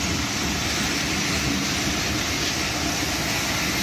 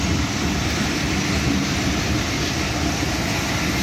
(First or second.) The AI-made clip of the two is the second